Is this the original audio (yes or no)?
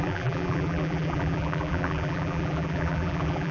no